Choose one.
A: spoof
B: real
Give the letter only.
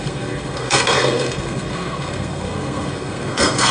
A